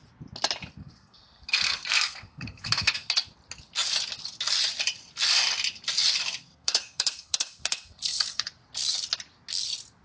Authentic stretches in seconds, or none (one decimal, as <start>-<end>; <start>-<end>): 0.0-0.8; 3.1-6.4; 8.5-10.0